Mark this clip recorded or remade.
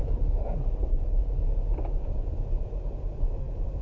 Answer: remade